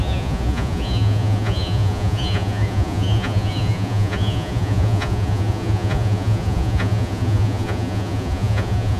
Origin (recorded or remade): remade